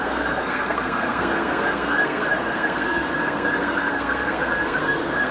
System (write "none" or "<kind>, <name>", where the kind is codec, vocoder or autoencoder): codec, SNAC